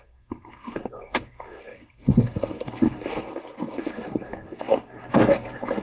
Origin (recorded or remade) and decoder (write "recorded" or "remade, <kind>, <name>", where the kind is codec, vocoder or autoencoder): remade, codec, SNAC